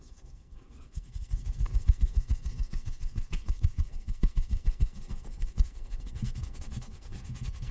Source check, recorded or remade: remade